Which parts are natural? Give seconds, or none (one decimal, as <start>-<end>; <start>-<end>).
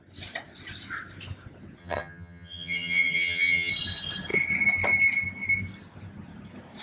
0.0-1.8; 3.7-6.8